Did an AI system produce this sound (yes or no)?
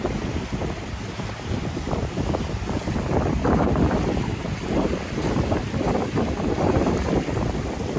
no